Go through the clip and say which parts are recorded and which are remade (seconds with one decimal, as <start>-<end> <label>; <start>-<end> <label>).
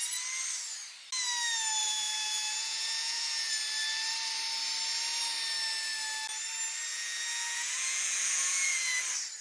0.0-1.8 recorded; 1.8-3.5 remade; 3.5-6.9 recorded; 6.9-9.0 remade; 9.0-9.4 recorded